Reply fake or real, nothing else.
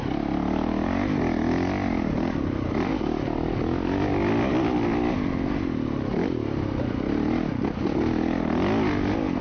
real